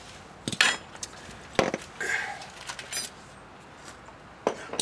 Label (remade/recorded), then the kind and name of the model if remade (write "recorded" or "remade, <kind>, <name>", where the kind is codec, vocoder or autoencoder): recorded